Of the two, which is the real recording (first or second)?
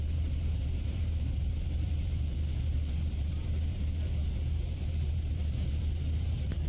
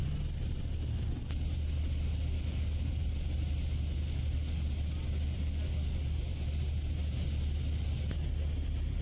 second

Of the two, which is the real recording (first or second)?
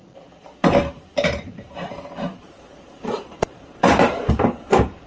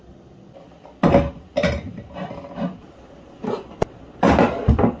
second